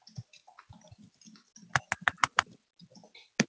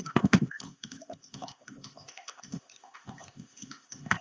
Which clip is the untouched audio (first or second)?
first